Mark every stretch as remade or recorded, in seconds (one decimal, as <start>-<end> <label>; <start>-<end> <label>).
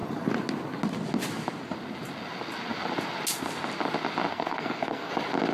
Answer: 0.0-4.3 recorded; 4.3-5.1 remade; 5.1-5.5 recorded